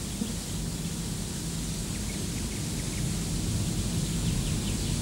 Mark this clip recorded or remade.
recorded